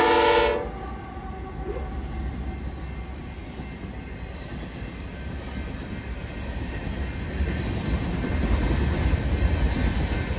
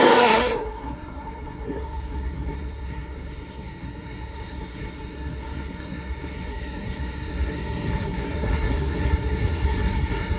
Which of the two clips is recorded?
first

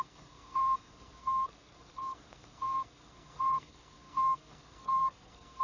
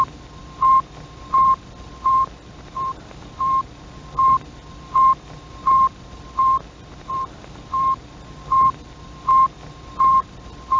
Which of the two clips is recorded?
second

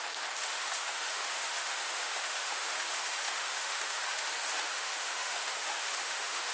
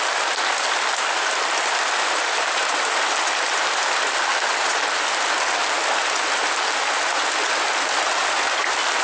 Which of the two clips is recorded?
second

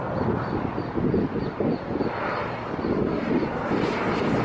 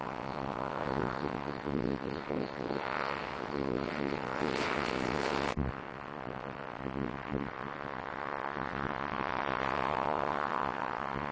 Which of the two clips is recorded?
first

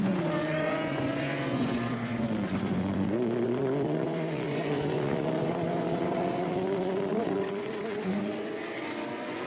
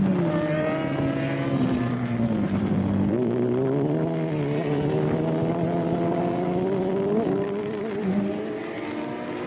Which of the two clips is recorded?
second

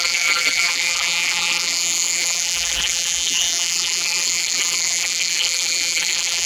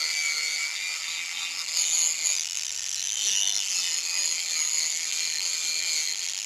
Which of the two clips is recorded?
second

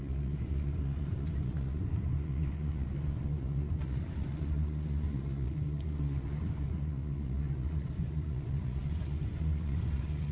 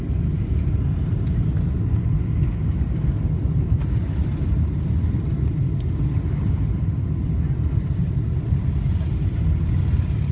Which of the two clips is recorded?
second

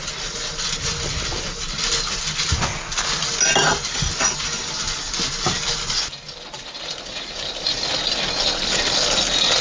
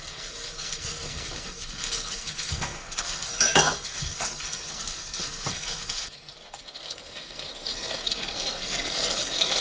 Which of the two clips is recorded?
first